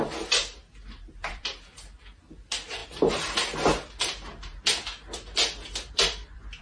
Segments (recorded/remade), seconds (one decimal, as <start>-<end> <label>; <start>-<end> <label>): 0.0-0.6 remade; 0.6-1.3 recorded; 1.3-2.8 remade; 2.8-5.9 recorded; 5.9-6.6 remade